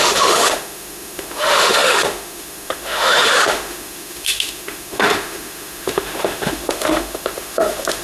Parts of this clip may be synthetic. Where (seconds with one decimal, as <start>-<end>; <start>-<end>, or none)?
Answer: 0.0-8.0